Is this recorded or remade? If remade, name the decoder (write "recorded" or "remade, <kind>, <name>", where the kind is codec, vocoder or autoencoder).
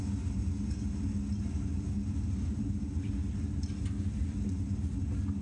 recorded